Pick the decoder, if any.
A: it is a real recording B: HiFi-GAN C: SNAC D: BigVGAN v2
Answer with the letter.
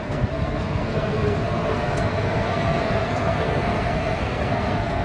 C